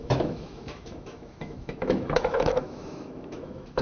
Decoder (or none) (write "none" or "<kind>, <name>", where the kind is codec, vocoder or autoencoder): autoencoder, DAC-VAE